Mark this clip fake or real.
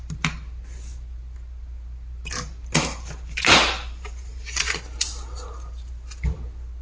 real